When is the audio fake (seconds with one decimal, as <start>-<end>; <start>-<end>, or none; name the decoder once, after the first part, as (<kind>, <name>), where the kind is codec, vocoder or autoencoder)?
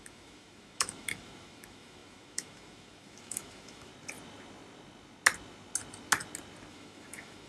0.0-3.9 (autoencoder, DAC-VAE); 6.7-7.5